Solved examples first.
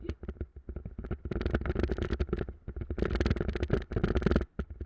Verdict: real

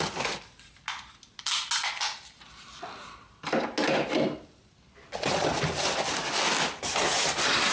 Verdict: real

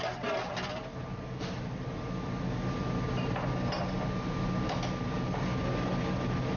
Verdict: real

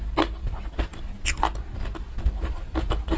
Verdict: real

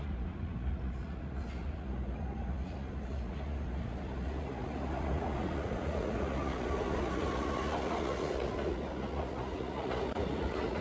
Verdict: fake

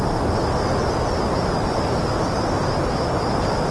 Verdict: real